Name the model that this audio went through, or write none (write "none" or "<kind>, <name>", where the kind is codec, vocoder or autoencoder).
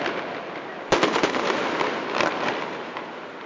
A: none